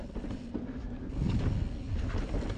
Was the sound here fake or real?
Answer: real